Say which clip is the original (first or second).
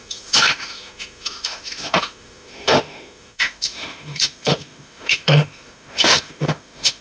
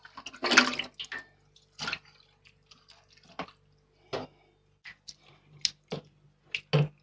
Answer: second